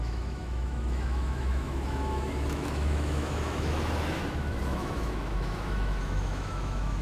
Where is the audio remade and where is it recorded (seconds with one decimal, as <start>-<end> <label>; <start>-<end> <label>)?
0.0-7.0 remade